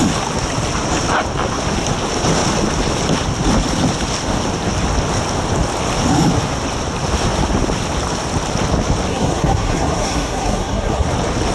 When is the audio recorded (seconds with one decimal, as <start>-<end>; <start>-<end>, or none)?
0.0-9.1; 11.1-11.5